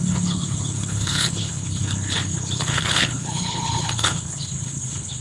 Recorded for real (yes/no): no